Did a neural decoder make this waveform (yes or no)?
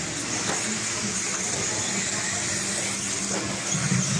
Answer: no